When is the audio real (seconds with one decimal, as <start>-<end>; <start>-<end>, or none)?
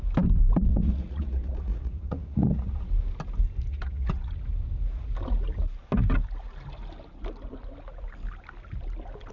0.0-0.7; 2.9-3.7; 4.3-9.3